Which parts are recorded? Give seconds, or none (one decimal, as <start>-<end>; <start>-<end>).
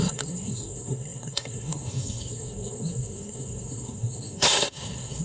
none